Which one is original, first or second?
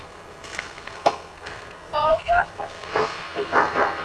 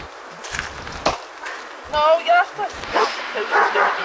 second